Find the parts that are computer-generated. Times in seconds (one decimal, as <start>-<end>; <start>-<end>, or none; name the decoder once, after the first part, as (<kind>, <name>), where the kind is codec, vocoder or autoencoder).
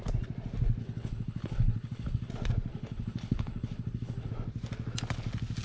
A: 0.8-2.3 (codec, HILCodec); 2.7-4.3